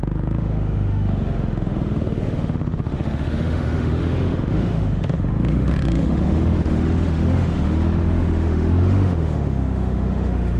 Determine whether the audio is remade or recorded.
remade